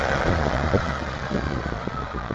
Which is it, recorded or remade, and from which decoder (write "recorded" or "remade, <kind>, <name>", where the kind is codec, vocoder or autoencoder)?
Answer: remade, vocoder, Vocos